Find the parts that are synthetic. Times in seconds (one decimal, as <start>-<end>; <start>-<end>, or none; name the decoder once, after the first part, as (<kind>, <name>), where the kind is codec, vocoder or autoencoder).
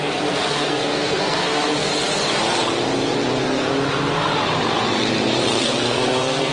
0.0-1.9 (codec, SNAC); 5.6-6.5